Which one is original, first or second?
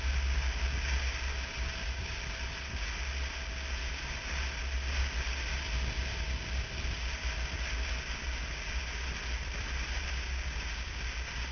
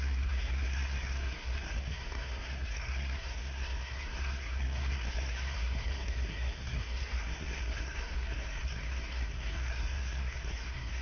first